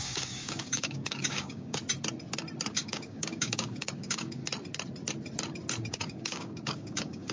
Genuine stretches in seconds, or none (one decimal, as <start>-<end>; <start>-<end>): 1.8-2.7; 4.4-5.9